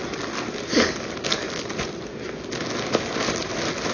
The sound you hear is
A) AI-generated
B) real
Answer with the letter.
B